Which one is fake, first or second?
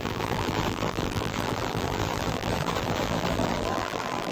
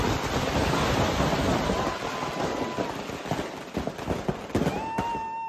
first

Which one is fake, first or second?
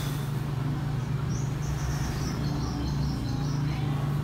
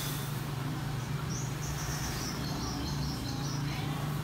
second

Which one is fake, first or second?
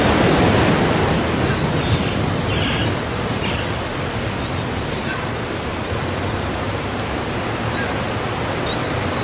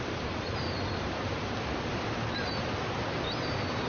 second